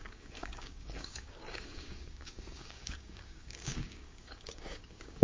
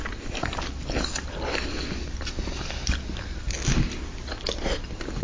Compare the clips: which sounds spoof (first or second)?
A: first